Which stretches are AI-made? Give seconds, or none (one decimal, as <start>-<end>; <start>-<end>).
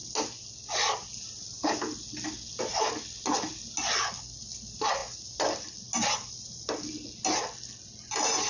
none